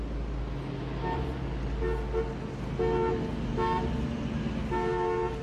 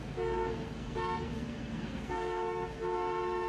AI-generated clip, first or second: second